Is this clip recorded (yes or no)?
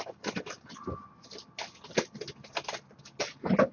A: yes